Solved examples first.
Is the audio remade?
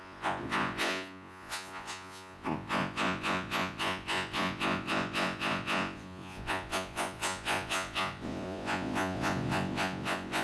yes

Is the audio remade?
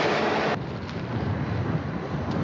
no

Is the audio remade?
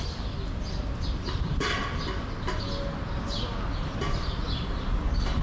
no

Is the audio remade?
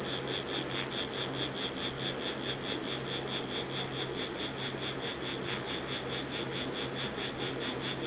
no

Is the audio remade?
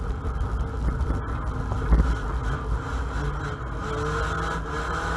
no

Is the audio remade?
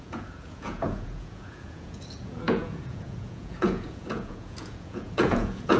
yes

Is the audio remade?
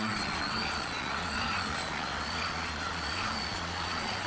yes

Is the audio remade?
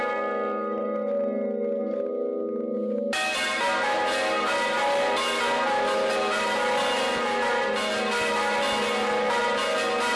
no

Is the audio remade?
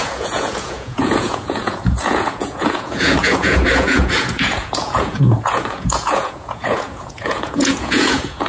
yes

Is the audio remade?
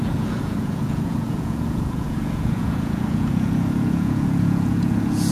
yes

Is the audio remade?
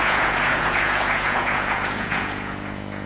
yes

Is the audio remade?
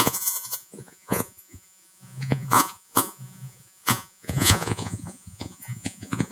yes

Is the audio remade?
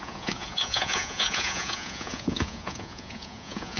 yes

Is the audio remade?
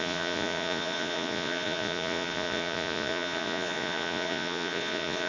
yes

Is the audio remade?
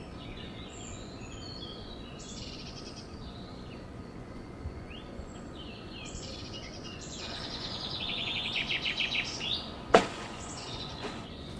yes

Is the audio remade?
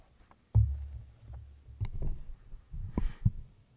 no